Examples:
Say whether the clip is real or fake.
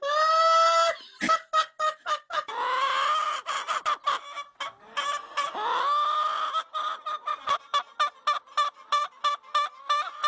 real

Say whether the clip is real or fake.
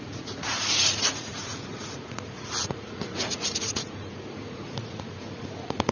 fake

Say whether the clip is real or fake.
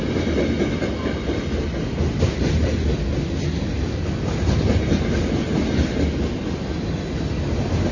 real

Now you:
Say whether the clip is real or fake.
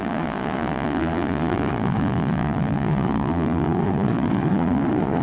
fake